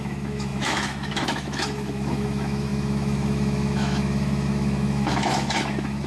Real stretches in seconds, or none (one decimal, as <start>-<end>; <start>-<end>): none